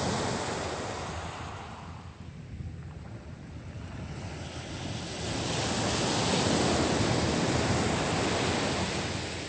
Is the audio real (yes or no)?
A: yes